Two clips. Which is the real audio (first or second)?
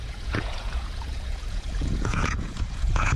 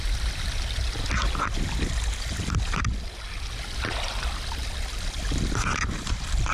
second